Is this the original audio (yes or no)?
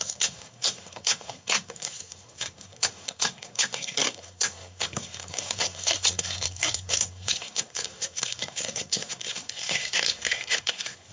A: no